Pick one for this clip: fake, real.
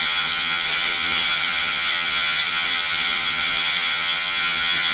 fake